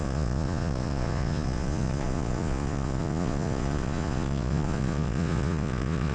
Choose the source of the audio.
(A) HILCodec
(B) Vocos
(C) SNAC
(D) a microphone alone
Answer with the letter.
B